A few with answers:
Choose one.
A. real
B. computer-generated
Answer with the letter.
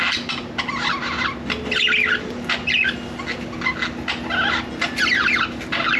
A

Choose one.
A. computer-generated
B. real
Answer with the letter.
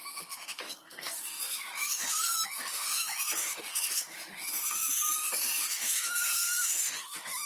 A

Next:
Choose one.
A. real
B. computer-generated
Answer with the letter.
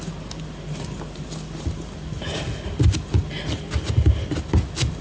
A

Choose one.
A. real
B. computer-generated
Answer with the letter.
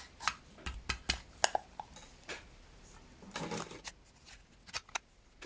A